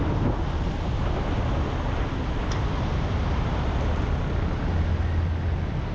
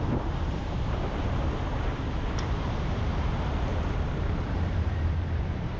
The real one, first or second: first